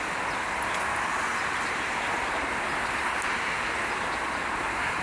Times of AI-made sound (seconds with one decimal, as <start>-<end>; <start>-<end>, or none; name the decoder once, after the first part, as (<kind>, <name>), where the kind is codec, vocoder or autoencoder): 1.3-2.5 (vocoder, BigVGAN v2)